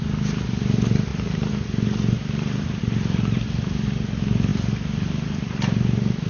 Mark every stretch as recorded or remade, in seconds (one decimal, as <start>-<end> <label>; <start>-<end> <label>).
0.0-6.3 recorded